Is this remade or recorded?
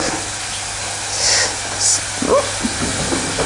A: recorded